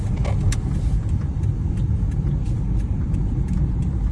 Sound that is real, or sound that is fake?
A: real